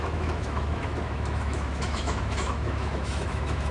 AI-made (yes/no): yes